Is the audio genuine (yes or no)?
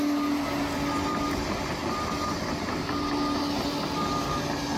yes